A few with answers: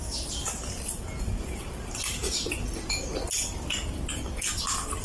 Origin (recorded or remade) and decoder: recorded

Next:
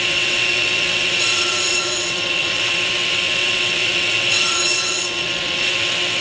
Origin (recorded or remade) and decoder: remade, vocoder, WaveNeXt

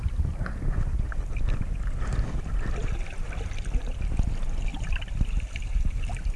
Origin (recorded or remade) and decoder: recorded